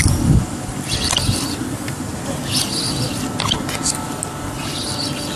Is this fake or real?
real